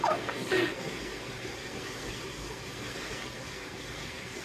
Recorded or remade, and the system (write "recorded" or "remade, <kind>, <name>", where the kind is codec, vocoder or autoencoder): remade, codec, SNAC